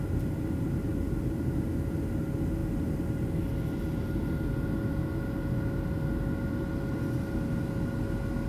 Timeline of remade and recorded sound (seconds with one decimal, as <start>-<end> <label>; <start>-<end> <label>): 0.0-8.5 recorded

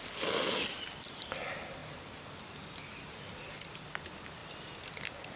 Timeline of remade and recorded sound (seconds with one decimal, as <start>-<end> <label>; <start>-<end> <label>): 0.0-5.4 recorded

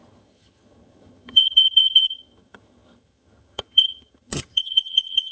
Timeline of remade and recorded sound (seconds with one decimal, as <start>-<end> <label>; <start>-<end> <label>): 0.0-5.3 remade

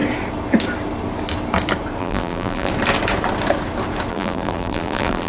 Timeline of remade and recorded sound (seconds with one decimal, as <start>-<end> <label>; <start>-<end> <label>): 0.0-2.0 recorded; 2.0-2.7 remade; 2.7-4.1 recorded; 4.1-5.3 remade

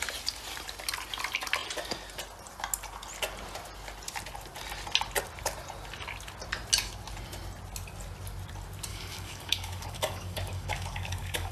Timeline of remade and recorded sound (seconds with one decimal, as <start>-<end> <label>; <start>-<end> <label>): 0.0-8.9 recorded; 8.9-11.5 remade

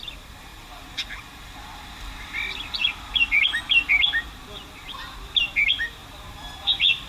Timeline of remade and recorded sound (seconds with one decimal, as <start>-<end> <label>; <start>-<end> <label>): 0.0-2.8 recorded; 2.8-3.6 remade; 3.6-6.0 recorded; 6.0-7.1 remade